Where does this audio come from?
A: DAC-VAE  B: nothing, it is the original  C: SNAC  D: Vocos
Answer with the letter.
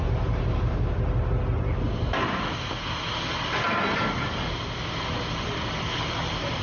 B